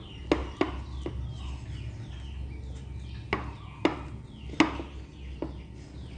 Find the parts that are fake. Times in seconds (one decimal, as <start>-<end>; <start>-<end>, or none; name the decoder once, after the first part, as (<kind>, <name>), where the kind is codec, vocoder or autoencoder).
none